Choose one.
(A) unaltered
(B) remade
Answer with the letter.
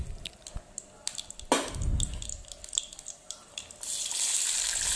A